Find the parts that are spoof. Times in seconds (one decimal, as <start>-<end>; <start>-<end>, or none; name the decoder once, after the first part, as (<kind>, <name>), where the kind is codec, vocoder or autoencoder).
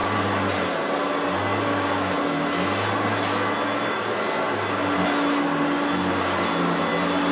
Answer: none